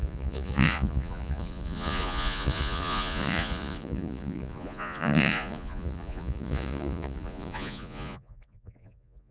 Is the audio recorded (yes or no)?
no